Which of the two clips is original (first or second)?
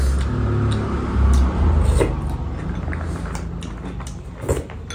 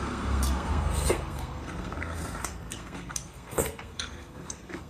first